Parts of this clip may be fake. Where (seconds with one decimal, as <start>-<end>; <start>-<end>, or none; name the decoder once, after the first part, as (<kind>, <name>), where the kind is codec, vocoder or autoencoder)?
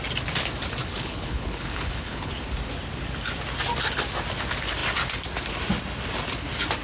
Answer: 0.9-2.3 (codec, HILCodec)